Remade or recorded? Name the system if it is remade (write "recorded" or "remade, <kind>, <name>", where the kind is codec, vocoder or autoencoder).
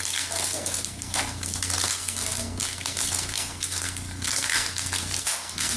remade, codec, SNAC